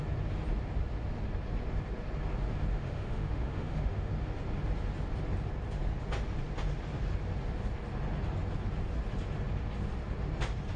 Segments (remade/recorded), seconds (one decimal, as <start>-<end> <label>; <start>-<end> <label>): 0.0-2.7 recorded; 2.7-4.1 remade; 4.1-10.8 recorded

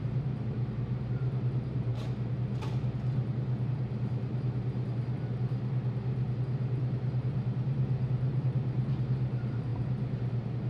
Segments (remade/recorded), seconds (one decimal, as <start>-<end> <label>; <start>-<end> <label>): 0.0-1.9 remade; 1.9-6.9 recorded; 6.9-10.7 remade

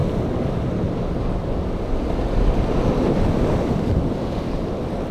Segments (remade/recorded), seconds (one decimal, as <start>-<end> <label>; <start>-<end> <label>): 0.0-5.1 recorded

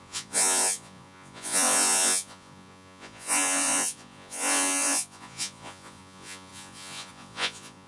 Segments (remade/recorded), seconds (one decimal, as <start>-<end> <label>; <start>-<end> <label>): 0.0-7.9 remade

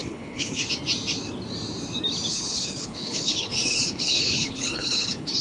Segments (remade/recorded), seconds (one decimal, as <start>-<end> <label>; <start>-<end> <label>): 0.0-0.7 remade; 0.7-2.3 recorded; 2.3-5.4 remade

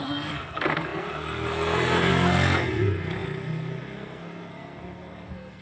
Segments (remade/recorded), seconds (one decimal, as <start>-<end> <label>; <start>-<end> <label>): 0.0-5.6 remade

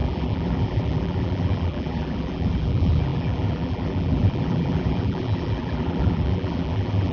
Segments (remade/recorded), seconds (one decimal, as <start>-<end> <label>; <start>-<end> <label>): 0.0-7.1 remade